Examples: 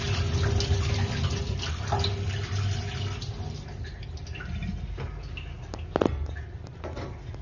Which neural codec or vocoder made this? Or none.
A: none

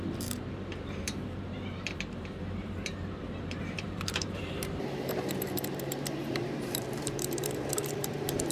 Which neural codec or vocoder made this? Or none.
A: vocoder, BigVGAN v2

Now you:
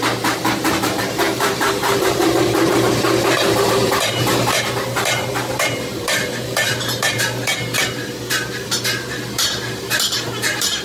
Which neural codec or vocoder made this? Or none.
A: vocoder, BigVGAN v2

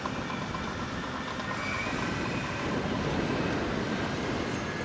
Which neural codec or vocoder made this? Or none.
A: none